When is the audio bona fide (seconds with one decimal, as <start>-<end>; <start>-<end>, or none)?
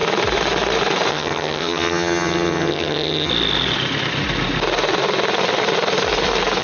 0.0-1.1; 3.3-6.6